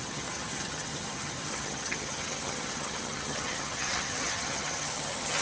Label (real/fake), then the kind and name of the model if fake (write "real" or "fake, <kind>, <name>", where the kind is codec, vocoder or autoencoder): fake, vocoder, HiFi-GAN